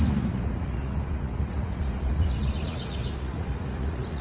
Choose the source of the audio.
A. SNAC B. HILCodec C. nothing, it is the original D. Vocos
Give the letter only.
D